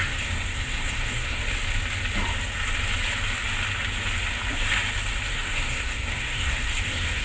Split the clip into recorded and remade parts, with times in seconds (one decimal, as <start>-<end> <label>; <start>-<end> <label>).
0.0-1.4 remade; 1.4-5.3 recorded; 5.3-7.2 remade